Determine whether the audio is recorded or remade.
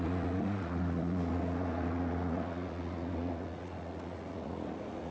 remade